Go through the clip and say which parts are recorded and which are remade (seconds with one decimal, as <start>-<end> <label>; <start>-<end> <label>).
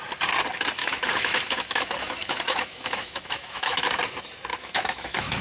0.0-0.8 recorded; 0.8-4.0 remade; 4.0-4.5 recorded; 4.5-5.4 remade